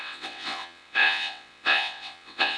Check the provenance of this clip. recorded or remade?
remade